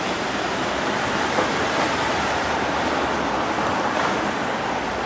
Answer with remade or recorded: recorded